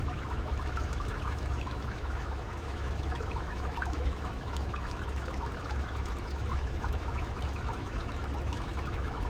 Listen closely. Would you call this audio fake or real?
fake